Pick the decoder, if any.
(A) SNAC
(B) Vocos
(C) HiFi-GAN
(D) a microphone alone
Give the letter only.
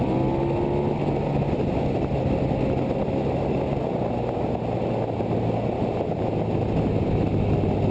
D